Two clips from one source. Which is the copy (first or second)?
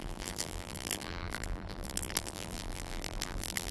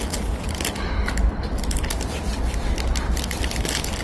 first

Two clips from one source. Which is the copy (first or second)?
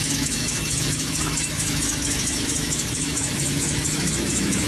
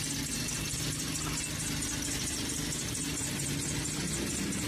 first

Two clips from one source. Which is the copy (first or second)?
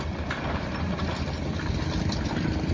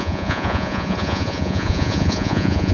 second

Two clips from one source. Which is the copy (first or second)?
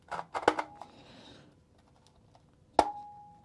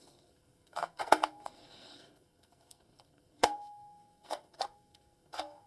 second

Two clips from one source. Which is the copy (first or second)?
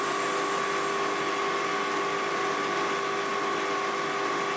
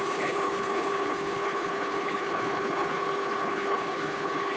second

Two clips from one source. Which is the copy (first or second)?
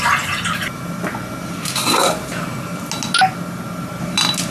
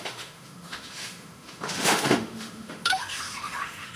second